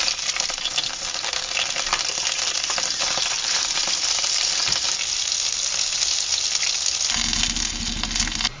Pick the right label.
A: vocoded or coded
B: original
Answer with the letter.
B